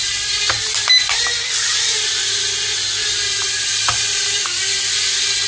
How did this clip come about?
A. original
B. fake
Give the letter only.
A